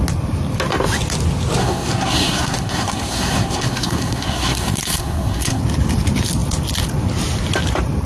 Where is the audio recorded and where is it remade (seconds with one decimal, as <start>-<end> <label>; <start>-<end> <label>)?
0.0-1.6 recorded; 1.6-5.6 remade; 5.6-8.1 recorded